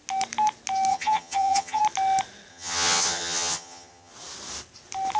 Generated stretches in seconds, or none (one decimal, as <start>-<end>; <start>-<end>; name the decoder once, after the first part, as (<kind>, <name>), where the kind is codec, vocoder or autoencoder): 0.9-1.8 (vocoder, HiFi-GAN); 2.5-4.1